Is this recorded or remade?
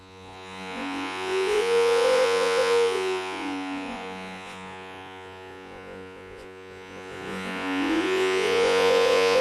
remade